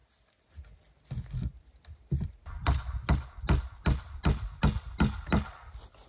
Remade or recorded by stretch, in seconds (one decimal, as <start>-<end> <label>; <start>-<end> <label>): 0.0-6.1 recorded